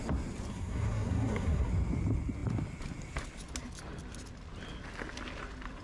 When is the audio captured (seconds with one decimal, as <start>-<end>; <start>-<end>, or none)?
0.0-0.5; 1.7-5.8